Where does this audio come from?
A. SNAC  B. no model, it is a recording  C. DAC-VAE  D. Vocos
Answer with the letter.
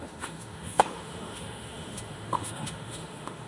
C